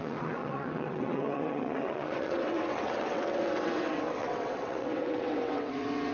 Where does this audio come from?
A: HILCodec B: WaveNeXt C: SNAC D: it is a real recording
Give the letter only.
B